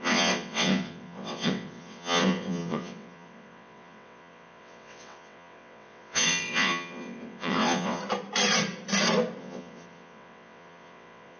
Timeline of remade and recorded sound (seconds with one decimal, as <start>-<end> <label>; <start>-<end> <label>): 0.0-8.0 remade; 8.0-9.4 recorded; 9.4-11.4 remade